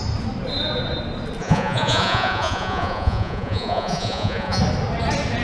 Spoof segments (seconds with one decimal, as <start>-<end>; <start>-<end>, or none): 1.4-4.6